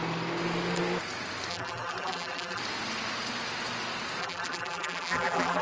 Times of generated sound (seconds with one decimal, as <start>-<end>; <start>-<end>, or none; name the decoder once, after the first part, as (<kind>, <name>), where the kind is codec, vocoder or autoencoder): 1.5-2.6 (vocoder, BigVGAN v2); 4.2-5.6